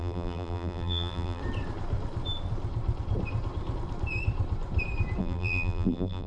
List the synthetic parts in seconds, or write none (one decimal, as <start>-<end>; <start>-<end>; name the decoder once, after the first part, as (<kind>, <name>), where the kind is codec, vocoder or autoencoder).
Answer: 0.0-1.4 (vocoder, BigVGAN v2); 5.2-6.3